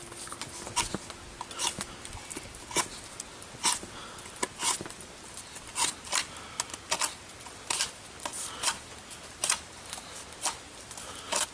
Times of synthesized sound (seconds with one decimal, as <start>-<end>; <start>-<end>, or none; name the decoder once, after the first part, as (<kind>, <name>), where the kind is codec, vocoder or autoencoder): none